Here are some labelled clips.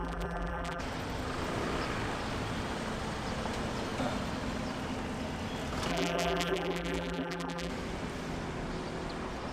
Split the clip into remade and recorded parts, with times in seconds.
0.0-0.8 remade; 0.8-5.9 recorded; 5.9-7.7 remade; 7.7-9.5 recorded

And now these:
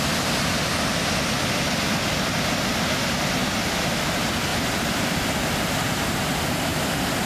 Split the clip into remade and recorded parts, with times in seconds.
0.0-3.4 recorded; 3.4-4.0 remade; 4.0-4.5 recorded; 4.5-5.2 remade; 5.2-6.7 recorded; 6.7-7.3 remade

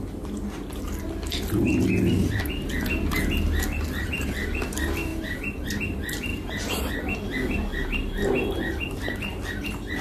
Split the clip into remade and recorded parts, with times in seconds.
0.0-6.3 recorded; 6.3-6.8 remade; 6.8-10.0 recorded

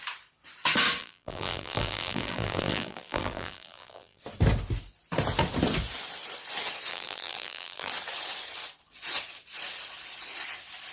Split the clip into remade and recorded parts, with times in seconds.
0.0-1.0 recorded; 1.0-4.2 remade; 4.2-6.9 recorded; 6.9-7.9 remade; 7.9-10.9 recorded

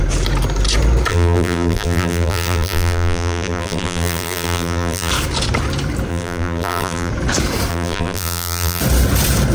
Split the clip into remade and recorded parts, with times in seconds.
0.0-1.1 recorded; 1.1-5.1 remade; 5.1-6.1 recorded; 6.1-7.1 remade; 7.1-7.7 recorded; 7.7-8.8 remade; 8.8-9.5 recorded

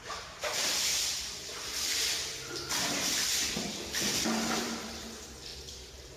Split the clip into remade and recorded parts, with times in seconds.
0.0-0.9 remade; 0.9-4.6 recorded; 4.6-6.2 remade